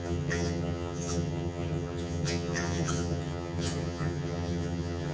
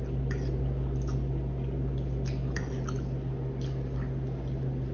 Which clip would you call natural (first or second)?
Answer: second